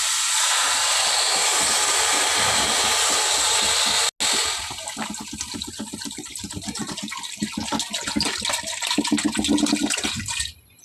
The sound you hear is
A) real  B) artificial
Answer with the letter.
A